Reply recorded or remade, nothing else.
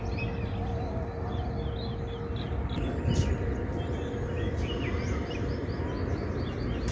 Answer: recorded